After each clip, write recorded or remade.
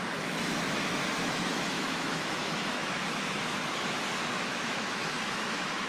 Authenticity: remade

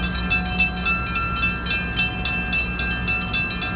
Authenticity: recorded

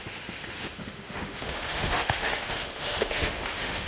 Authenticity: remade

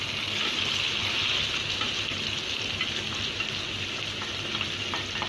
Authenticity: recorded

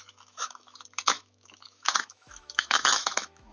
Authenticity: remade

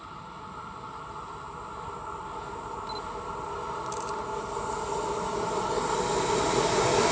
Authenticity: recorded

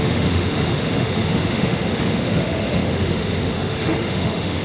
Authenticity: remade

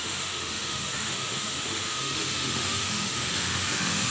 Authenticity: remade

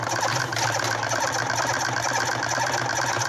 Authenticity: recorded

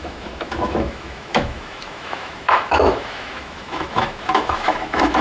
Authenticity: remade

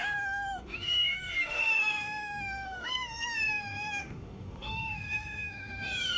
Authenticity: remade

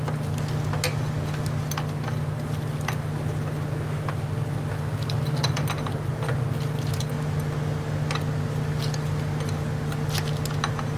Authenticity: recorded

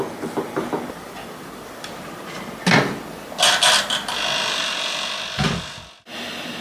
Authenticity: recorded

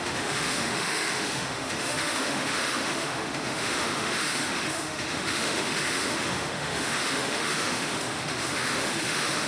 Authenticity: remade